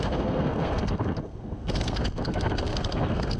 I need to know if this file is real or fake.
fake